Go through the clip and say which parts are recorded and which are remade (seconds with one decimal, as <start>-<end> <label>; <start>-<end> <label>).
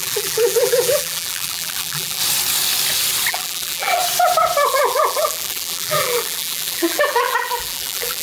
0.0-2.2 remade; 2.2-3.3 recorded; 3.3-4.0 remade; 4.0-4.7 recorded; 4.7-8.2 remade